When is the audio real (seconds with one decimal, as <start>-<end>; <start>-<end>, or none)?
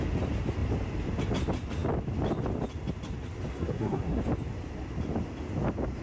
0.0-3.5; 4.2-6.0